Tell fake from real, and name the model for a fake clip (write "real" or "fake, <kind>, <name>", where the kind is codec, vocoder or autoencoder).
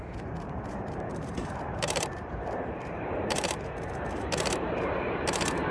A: fake, vocoder, BigVGAN v2